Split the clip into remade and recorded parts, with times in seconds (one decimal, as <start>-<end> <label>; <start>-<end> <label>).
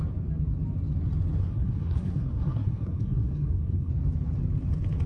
0.0-1.4 recorded; 1.4-3.9 remade; 3.9-5.1 recorded